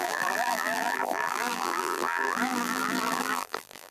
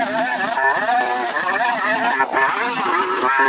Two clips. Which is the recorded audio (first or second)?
second